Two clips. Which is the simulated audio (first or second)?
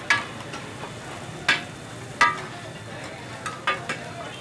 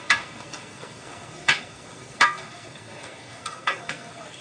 second